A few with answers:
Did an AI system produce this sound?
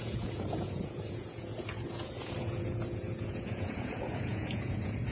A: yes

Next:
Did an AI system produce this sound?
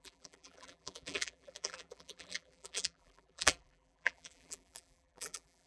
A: yes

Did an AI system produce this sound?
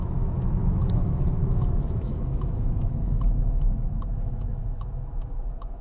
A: yes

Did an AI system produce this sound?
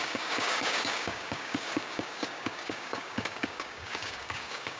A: yes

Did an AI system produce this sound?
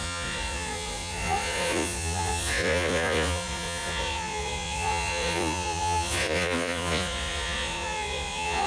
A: yes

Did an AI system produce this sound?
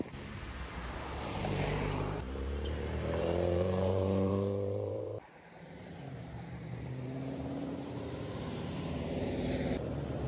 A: yes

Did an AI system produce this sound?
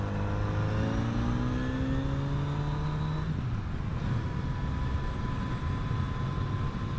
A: no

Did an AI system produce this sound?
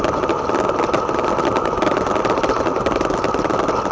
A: no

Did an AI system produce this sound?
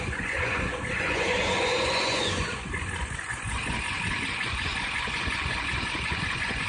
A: yes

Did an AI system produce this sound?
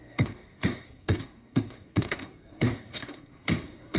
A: yes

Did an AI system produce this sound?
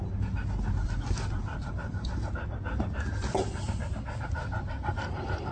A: no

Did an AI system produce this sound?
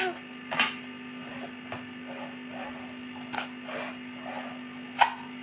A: no